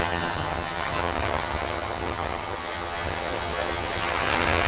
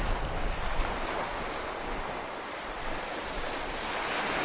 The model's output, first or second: first